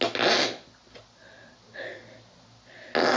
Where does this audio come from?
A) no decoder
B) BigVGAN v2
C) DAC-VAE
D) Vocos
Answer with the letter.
A